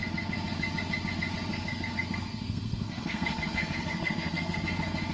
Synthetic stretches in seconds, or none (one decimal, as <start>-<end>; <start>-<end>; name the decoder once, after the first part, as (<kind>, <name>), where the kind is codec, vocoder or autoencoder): 1.5-4.6 (codec, SNAC)